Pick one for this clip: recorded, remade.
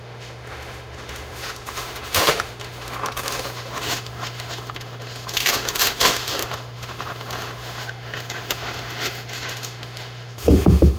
remade